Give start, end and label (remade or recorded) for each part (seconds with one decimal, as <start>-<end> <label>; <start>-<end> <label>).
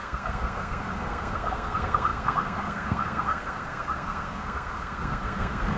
0.0-5.8 remade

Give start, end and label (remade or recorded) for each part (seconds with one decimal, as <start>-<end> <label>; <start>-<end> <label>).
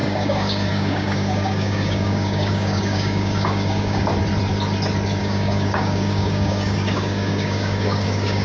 0.0-4.1 remade; 4.1-5.2 recorded; 5.2-8.4 remade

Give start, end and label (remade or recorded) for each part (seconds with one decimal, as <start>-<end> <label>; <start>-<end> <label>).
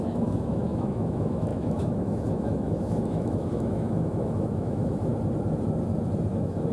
0.0-5.1 remade; 5.1-6.3 recorded; 6.3-6.7 remade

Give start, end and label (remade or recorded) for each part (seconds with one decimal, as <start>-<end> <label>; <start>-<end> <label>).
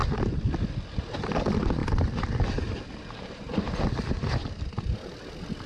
0.0-5.7 recorded